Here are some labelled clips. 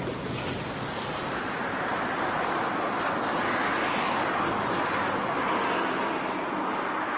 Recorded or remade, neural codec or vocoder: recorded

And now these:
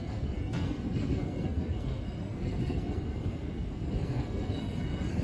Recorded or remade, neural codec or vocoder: remade, codec, SNAC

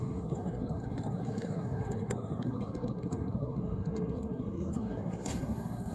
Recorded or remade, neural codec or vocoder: remade, codec, SNAC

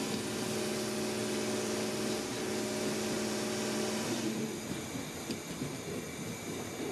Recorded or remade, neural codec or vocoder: recorded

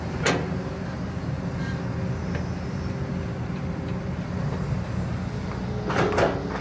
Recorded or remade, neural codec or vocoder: recorded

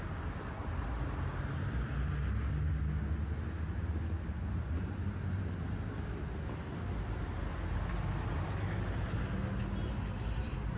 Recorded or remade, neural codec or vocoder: recorded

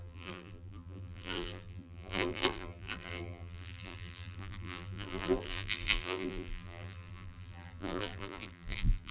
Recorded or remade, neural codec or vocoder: remade, vocoder, BigVGAN v2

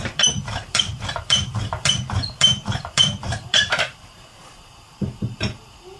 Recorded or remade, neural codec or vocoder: remade, vocoder, BigVGAN v2